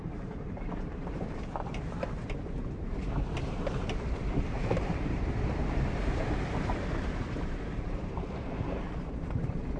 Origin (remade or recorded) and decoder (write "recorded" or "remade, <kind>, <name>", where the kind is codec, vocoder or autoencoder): remade, vocoder, BigVGAN v2